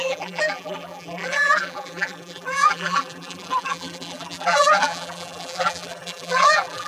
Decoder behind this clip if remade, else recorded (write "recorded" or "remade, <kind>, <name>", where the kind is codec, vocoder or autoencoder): remade, vocoder, BigVGAN v2